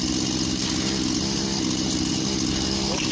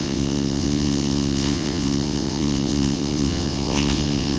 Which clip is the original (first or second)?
first